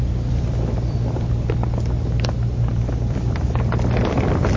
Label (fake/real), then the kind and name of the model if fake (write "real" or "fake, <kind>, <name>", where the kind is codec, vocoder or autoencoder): fake, vocoder, BigVGAN v2